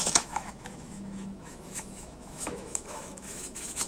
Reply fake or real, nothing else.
fake